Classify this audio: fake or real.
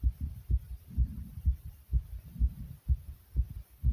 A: real